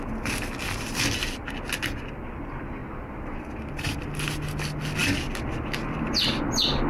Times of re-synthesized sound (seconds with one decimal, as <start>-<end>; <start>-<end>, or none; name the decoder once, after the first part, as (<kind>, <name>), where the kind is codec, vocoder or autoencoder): 2.8-4.1 (vocoder, BigVGAN v2)